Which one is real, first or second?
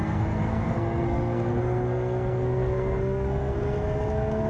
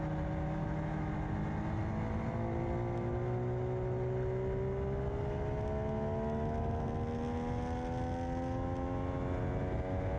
second